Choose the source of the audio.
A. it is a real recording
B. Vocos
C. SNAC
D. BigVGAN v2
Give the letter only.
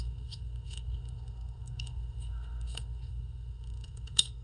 C